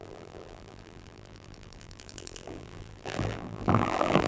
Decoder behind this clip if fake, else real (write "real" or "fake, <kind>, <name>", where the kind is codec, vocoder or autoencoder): fake, vocoder, BigVGAN v2